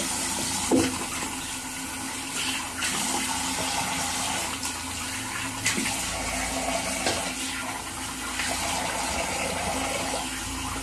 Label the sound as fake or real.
real